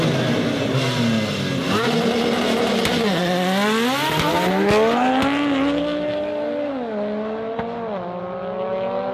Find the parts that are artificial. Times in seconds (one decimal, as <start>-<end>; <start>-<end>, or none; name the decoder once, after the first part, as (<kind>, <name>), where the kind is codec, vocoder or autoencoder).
none